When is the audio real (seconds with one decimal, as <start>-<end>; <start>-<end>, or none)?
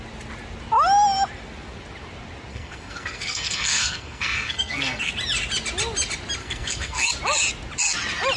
0.0-2.5; 5.1-6.4; 7.1-8.4